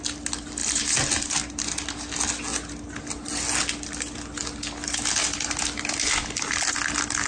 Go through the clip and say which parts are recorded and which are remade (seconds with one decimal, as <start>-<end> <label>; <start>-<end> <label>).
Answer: 0.0-7.3 recorded

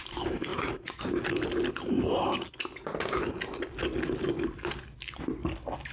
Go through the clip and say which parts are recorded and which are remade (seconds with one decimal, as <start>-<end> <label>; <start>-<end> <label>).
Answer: 0.0-0.5 recorded; 0.5-1.0 remade; 1.0-5.9 recorded

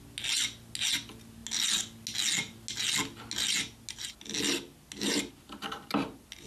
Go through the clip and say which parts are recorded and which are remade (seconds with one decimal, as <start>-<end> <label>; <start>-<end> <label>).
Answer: 0.0-6.5 recorded